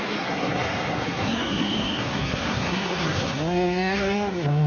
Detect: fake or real fake